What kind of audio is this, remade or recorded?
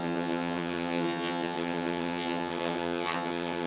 remade